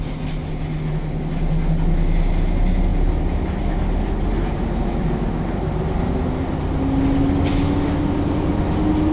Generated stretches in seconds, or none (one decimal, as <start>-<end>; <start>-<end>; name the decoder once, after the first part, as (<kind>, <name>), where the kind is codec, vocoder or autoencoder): none